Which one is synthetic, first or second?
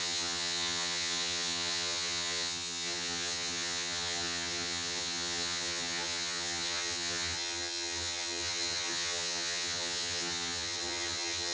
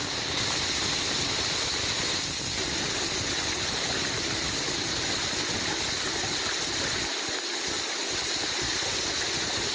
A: first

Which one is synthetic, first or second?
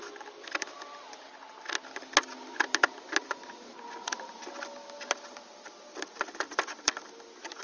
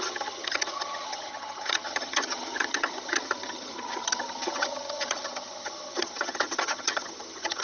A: second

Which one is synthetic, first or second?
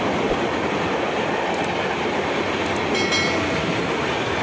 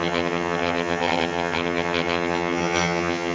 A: second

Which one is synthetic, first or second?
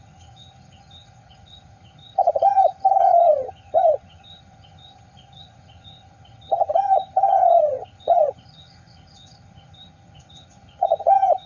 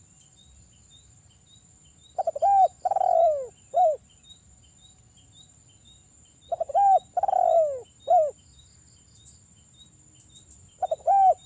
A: first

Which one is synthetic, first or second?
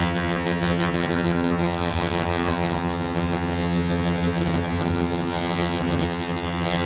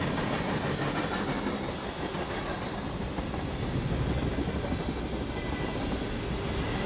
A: first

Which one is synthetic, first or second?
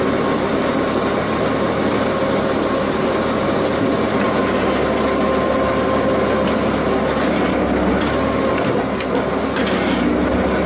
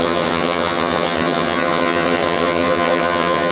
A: second